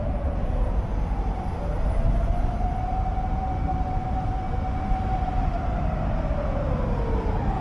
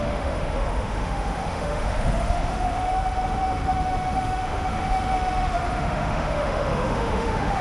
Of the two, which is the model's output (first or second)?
second